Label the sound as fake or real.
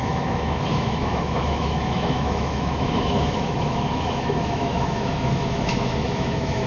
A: fake